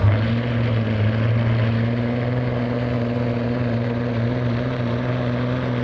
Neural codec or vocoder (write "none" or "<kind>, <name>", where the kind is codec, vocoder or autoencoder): none